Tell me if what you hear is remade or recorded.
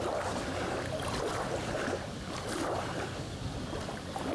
remade